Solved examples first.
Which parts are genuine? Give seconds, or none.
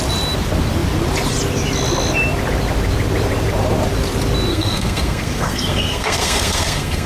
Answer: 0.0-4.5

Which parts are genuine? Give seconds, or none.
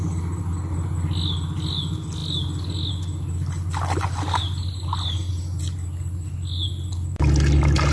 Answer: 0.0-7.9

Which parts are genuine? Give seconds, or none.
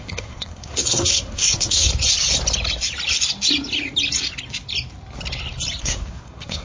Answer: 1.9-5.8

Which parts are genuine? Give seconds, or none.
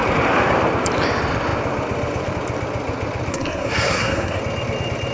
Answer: 0.0-3.3; 4.4-5.1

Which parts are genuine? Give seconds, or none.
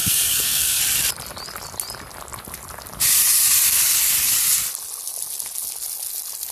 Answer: 0.8-6.5